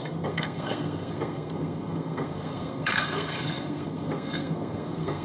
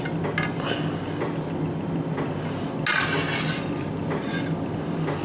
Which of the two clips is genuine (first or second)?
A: second